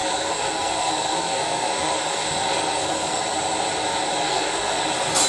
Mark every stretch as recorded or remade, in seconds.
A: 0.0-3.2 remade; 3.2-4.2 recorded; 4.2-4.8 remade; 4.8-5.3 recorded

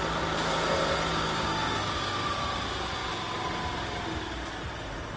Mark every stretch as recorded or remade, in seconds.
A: 0.0-1.1 recorded; 1.1-2.4 remade; 2.4-5.2 recorded

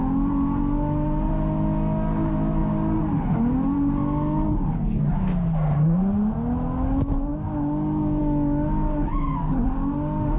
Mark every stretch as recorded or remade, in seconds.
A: 0.0-10.4 recorded

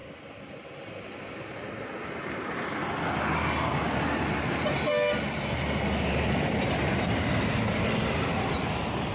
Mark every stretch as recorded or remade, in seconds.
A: 0.0-9.1 recorded

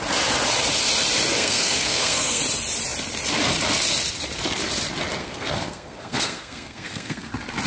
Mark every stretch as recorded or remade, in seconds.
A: 0.0-1.3 recorded; 1.3-2.4 remade; 2.4-5.2 recorded; 5.2-7.3 remade; 7.3-7.7 recorded

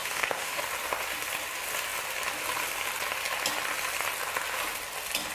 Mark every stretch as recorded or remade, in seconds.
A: 0.0-0.6 remade; 0.6-5.3 recorded

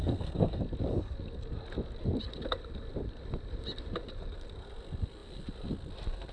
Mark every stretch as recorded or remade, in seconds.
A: 0.0-0.6 remade; 0.6-6.3 recorded